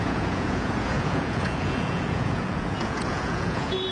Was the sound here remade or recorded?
remade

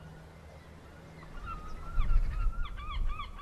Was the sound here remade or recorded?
recorded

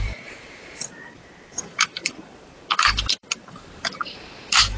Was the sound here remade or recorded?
remade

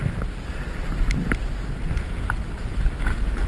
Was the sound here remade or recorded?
recorded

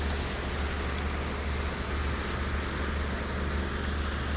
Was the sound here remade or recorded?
recorded